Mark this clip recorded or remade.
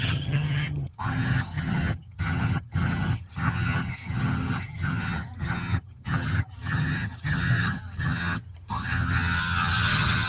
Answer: remade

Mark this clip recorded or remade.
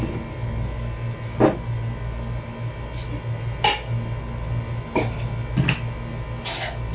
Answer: recorded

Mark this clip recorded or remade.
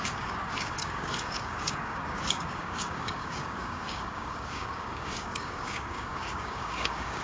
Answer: remade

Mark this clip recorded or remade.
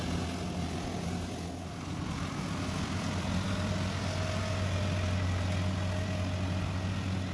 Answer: recorded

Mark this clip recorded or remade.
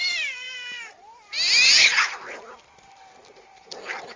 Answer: remade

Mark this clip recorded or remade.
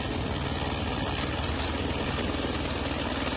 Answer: recorded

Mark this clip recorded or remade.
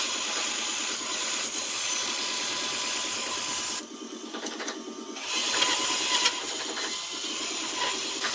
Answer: recorded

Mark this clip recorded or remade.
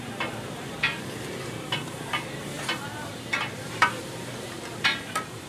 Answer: remade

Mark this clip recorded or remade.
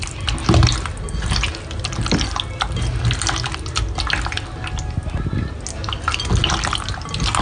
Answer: recorded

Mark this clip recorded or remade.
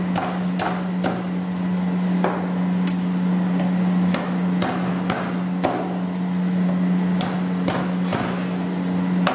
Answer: recorded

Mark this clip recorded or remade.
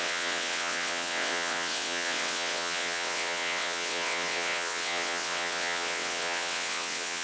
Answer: remade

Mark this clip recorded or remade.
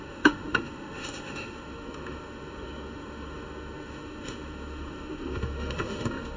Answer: remade